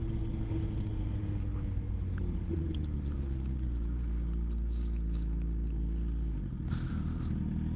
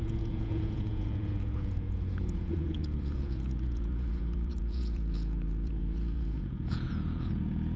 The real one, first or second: first